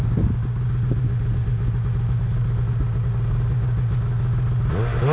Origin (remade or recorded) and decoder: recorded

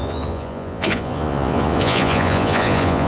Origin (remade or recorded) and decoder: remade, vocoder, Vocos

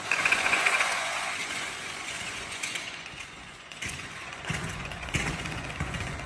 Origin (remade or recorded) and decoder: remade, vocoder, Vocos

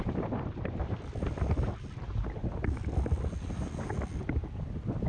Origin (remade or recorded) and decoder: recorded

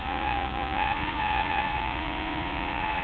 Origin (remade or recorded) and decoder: remade, vocoder, Vocos